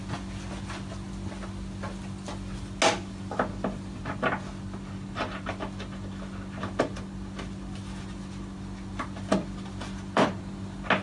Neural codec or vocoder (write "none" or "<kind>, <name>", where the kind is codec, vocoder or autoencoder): none